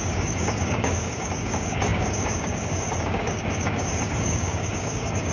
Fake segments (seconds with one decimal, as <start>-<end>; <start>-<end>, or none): 0.0-5.3